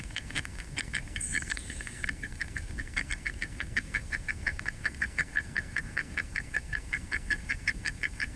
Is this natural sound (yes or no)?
no